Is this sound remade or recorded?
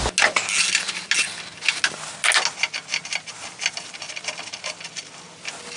recorded